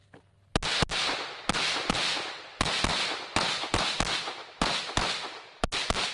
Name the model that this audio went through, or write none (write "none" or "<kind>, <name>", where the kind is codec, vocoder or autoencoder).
none